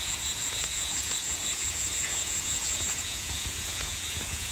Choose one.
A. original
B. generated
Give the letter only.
B